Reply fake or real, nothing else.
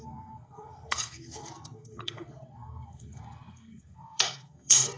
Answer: fake